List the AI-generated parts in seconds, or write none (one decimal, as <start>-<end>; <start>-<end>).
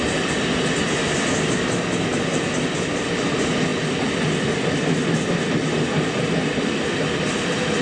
none